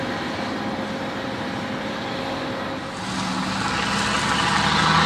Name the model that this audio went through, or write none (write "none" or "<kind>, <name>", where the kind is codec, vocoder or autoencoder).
none